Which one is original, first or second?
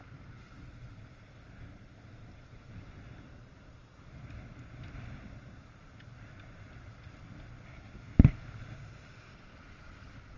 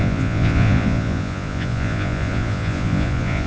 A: first